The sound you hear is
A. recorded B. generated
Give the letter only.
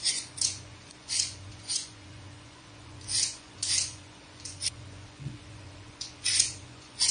B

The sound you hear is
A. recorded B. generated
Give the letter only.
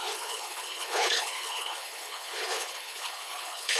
B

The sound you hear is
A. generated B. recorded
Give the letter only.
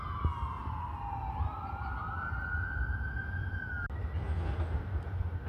B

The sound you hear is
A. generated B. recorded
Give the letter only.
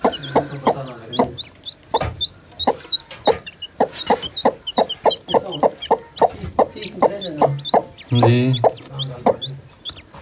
B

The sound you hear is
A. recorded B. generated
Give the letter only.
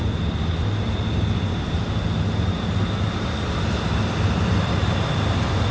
A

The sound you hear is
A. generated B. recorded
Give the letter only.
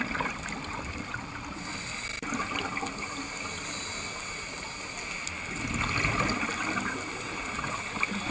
B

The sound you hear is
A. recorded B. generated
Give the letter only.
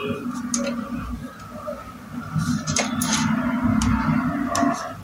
A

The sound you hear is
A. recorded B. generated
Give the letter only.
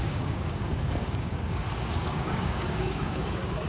B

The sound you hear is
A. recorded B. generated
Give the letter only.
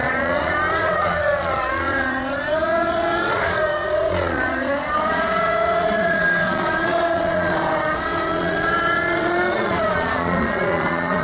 B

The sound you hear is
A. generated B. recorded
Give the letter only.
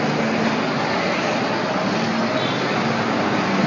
B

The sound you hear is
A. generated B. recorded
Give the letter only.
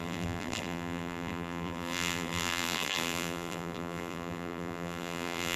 A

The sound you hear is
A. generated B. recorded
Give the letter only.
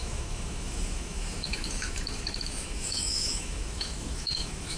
A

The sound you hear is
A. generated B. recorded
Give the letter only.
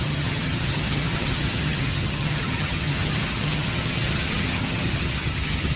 A